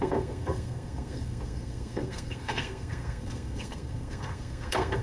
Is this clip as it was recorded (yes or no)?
no